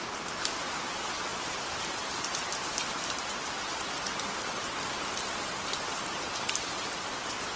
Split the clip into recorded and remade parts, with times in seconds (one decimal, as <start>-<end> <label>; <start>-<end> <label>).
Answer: 0.0-7.6 recorded